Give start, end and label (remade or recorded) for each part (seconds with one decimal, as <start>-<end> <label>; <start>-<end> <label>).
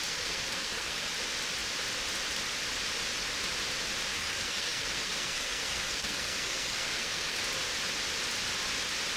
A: 0.0-1.1 remade; 1.1-4.1 recorded; 4.1-7.4 remade; 7.4-9.2 recorded